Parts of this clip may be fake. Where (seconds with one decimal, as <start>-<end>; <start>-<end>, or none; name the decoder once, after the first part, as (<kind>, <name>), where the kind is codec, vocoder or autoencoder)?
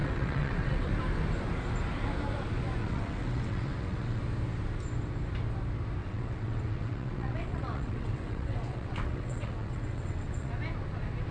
0.0-0.9 (vocoder, WaveNeXt); 2.8-4.2; 6.0-10.5